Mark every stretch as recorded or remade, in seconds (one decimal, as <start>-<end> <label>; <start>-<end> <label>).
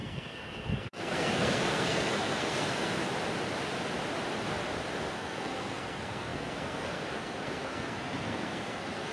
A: 0.0-3.0 remade; 3.0-5.1 recorded; 5.1-9.1 remade